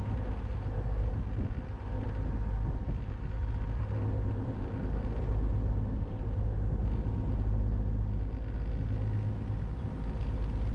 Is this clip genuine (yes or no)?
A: yes